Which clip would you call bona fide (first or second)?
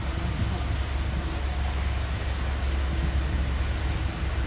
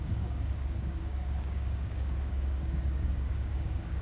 first